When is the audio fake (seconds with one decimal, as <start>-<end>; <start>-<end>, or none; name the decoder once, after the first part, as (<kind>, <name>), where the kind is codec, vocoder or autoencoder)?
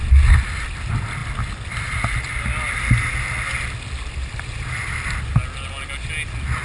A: none